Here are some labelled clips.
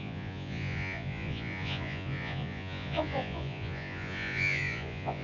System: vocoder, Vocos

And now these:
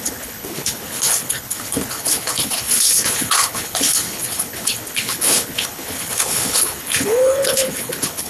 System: codec, HILCodec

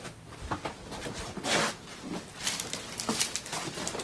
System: none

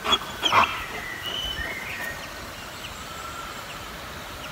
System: none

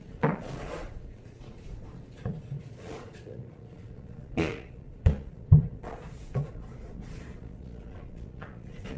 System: vocoder, Vocos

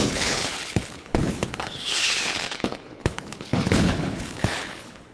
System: codec, HILCodec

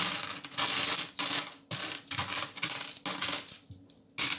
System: none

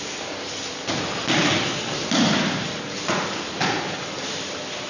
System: vocoder, BigVGAN v2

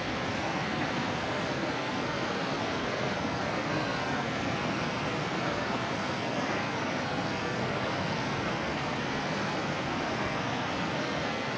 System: codec, SNAC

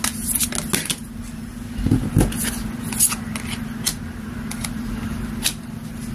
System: none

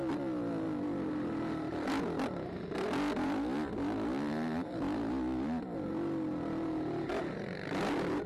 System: none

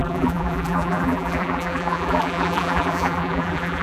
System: vocoder, BigVGAN v2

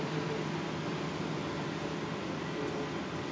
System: none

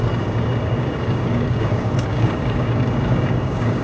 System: codec, DAC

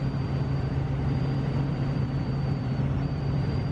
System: vocoder, BigVGAN v2